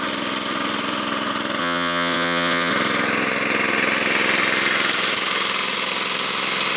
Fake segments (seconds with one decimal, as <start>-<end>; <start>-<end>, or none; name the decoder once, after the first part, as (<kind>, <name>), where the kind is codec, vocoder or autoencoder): 1.6-2.7 (vocoder, WaveNeXt)